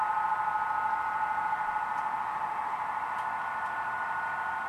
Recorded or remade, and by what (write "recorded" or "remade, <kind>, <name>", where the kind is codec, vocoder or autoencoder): recorded